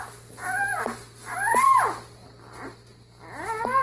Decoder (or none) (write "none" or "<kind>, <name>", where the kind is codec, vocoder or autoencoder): none